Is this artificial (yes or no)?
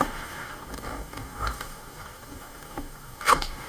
yes